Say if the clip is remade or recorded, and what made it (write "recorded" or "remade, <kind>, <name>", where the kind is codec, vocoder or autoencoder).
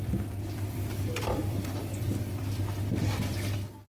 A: remade, vocoder, BigVGAN v2